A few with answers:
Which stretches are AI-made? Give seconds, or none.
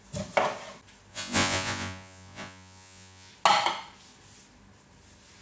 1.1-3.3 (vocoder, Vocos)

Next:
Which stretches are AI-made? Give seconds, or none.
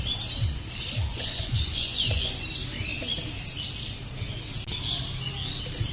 1.1-2.4 (vocoder, Vocos)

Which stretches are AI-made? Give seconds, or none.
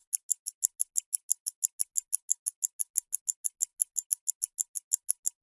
none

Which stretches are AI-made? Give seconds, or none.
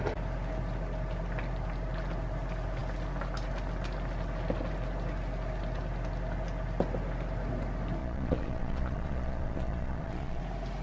8.0-10.4 (vocoder, Vocos)